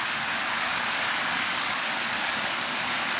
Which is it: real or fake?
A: fake